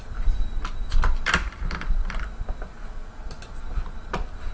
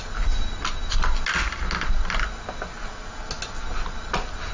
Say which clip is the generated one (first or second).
first